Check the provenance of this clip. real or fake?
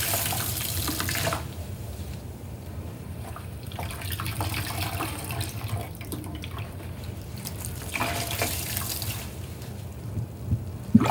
fake